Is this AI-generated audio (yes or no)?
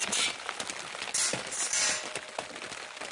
no